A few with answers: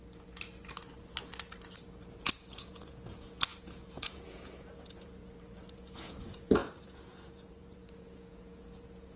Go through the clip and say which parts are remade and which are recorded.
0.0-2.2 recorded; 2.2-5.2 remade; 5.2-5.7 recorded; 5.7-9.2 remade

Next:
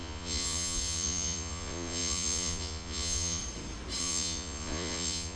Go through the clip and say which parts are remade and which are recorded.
0.0-3.4 remade; 3.4-4.0 recorded; 4.0-5.4 remade

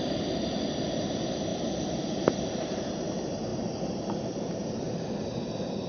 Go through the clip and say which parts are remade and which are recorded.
0.0-5.9 recorded

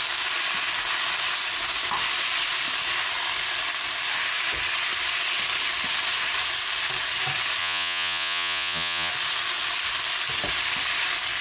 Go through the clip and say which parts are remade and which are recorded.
0.0-7.6 recorded; 7.6-9.1 remade; 9.1-11.4 recorded

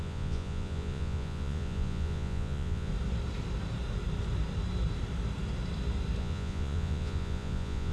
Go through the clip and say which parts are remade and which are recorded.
0.0-2.9 remade; 2.9-6.2 recorded; 6.2-7.9 remade

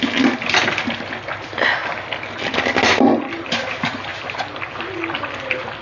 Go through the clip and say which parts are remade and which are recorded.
0.0-5.8 recorded

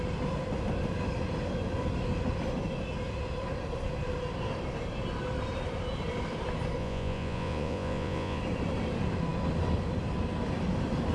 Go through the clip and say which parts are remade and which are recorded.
0.0-6.8 recorded; 6.8-8.4 remade; 8.4-11.1 recorded

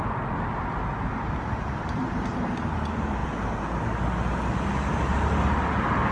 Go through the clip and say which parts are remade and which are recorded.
0.0-6.1 recorded